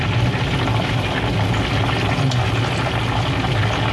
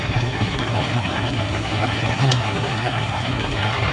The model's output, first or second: second